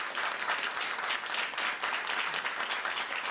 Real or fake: real